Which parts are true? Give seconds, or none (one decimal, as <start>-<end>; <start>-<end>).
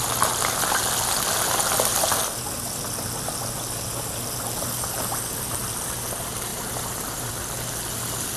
0.0-6.5; 7.3-8.4